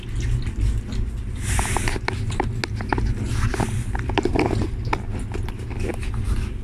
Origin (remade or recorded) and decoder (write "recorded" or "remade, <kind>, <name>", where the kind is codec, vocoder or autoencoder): recorded